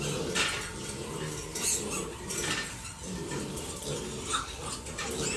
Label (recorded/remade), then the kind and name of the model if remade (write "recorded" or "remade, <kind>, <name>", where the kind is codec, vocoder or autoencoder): recorded